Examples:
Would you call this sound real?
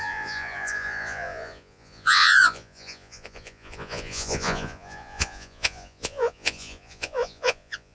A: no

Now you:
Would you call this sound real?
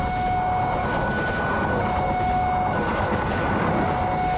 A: yes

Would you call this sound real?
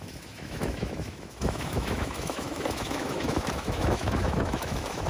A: no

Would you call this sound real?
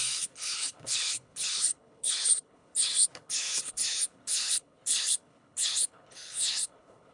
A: no